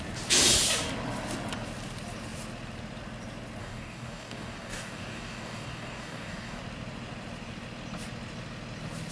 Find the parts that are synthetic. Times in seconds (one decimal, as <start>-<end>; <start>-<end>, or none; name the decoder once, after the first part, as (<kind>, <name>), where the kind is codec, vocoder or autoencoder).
3.6-6.6 (codec, DAC)